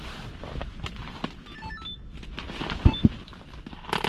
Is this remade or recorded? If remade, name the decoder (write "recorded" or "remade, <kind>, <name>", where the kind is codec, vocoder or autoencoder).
recorded